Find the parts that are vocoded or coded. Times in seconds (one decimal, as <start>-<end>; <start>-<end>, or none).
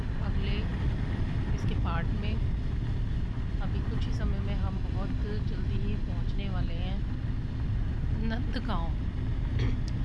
0.7-2.4